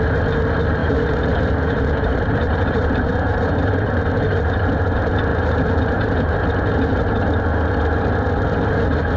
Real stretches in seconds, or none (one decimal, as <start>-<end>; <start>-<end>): 0.0-0.8; 3.9-5.3; 6.4-9.2